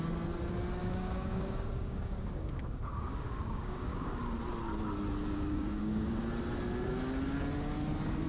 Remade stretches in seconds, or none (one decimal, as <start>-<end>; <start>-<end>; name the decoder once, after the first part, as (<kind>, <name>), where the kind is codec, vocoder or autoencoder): 0.8-4.2 (codec, DAC); 5.2-6.2